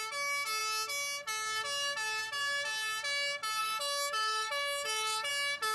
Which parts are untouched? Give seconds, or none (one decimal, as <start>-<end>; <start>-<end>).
0.0-3.6; 5.3-5.7